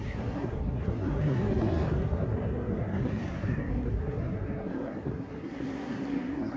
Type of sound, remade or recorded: remade